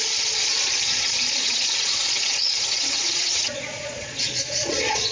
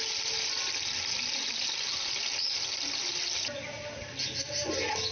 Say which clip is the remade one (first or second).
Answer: first